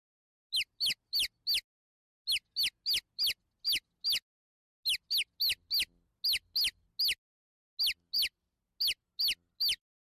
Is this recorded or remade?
recorded